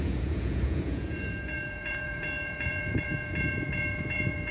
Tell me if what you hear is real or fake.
fake